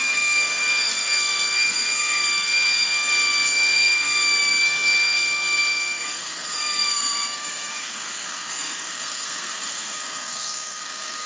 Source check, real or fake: fake